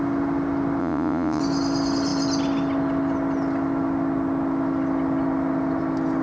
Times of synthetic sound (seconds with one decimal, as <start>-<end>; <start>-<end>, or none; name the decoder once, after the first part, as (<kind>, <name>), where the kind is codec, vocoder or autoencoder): 0.8-1.4 (vocoder, Vocos)